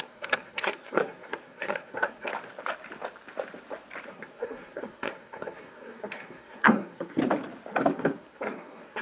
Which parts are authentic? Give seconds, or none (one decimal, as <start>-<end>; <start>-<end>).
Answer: 2.3-4.1; 7.2-7.7